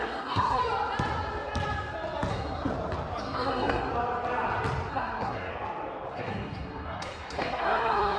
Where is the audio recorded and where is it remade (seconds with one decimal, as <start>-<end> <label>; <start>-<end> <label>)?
0.0-0.6 remade; 0.6-2.3 recorded; 2.3-2.7 remade; 2.7-3.2 recorded; 3.2-3.9 remade; 3.9-4.9 recorded; 4.9-5.5 remade; 5.5-6.1 recorded; 6.1-8.2 remade